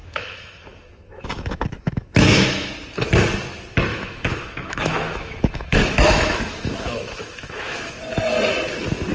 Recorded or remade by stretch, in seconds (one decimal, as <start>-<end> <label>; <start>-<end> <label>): 0.0-2.7 remade; 2.7-3.9 recorded; 3.9-7.9 remade; 7.9-9.1 recorded